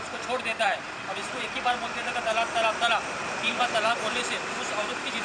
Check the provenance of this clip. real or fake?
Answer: fake